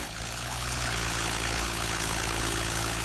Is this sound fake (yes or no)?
yes